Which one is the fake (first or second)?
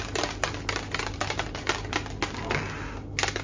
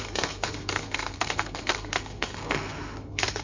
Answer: second